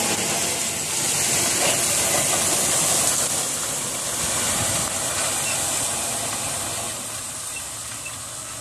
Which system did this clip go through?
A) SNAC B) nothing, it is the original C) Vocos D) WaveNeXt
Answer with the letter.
B